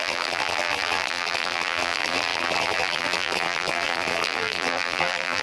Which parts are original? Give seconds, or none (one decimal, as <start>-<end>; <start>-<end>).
none